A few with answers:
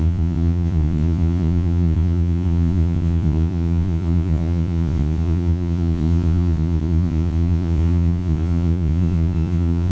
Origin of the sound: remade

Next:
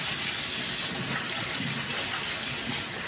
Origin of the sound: recorded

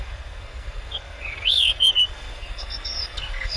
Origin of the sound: remade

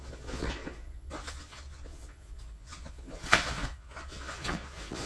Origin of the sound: remade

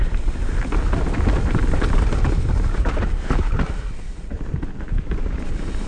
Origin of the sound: recorded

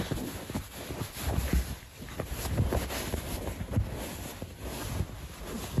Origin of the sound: recorded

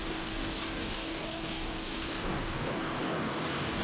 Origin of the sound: remade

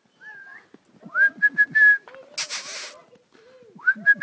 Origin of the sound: recorded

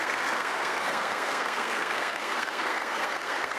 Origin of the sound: remade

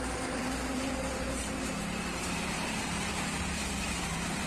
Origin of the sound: remade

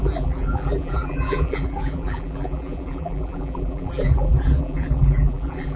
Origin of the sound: remade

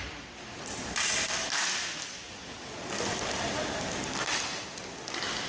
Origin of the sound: recorded